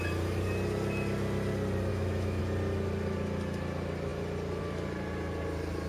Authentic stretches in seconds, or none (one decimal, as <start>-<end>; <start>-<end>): 0.0-1.9; 2.4-5.9